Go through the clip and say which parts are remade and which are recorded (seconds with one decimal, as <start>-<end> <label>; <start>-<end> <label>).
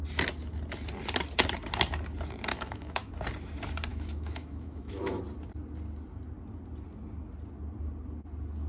0.0-2.5 recorded; 2.5-3.1 remade; 3.1-3.9 recorded; 3.9-5.2 remade; 5.2-8.7 recorded